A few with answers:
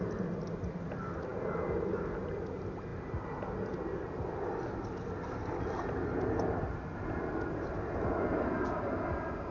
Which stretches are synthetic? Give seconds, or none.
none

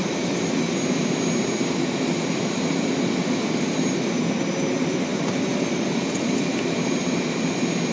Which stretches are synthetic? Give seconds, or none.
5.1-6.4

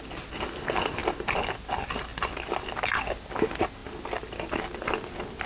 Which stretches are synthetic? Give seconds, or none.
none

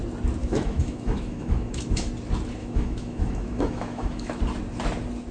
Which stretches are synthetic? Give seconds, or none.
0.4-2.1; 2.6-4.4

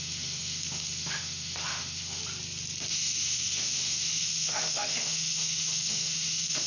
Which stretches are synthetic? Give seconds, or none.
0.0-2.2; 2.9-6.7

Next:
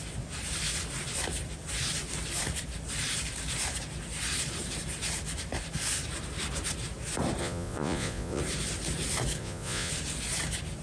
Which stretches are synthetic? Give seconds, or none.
7.4-8.4; 9.4-9.9